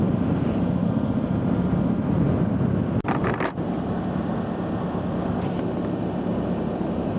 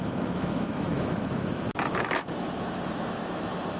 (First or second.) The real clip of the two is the first